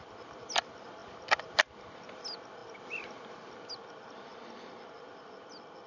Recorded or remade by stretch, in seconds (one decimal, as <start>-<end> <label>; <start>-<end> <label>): 0.0-5.9 recorded